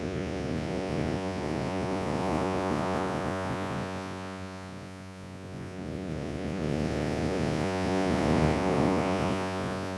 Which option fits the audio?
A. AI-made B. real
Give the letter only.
A